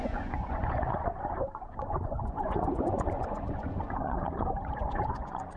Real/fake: fake